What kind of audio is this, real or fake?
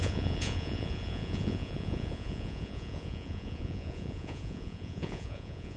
fake